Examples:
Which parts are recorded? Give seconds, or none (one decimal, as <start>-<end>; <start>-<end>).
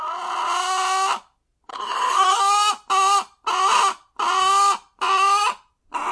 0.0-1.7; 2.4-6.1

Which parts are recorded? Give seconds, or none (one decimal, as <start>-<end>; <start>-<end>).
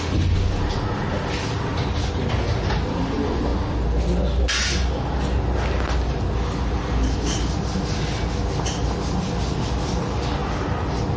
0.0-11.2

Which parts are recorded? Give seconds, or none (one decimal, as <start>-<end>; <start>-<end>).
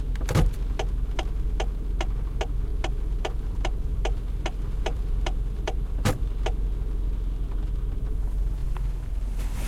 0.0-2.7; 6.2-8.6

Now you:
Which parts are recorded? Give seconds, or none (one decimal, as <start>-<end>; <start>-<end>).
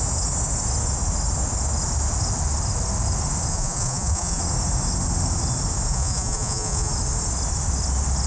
0.0-3.5; 4.4-5.9; 6.9-8.3